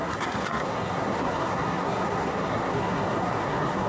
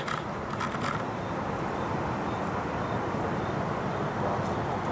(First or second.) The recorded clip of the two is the second